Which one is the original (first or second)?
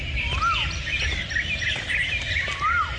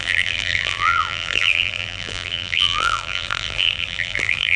first